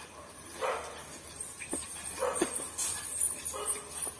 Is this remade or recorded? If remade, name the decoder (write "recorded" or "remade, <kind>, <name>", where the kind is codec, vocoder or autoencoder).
recorded